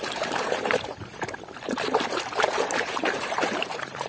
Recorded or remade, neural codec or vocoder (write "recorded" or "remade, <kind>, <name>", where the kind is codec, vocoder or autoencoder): remade, vocoder, BigVGAN v2